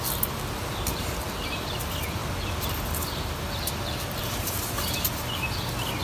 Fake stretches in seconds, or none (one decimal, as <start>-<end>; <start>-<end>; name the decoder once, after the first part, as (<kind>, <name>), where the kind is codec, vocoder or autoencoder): none

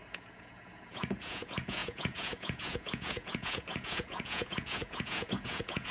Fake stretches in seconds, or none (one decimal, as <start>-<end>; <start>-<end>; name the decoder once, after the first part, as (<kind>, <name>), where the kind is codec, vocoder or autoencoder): 0.0-5.9 (vocoder, Vocos)

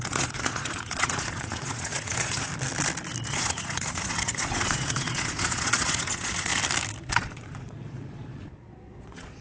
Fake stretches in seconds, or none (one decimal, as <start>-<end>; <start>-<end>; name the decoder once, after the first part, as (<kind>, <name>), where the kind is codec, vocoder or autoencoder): 0.0-2.5 (vocoder, Vocos); 3.3-6.5; 7.1-9.4

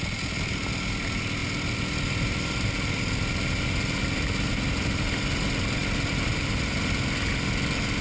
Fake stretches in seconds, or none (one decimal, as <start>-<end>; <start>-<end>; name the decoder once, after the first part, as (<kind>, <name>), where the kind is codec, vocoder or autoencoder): 1.4-3.6 (vocoder, BigVGAN v2); 5.8-6.8

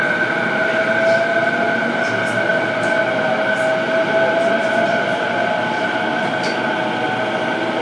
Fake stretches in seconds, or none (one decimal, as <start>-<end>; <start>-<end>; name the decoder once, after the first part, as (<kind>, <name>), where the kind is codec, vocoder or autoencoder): none